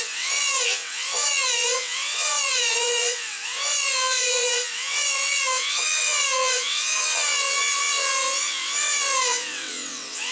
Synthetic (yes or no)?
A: yes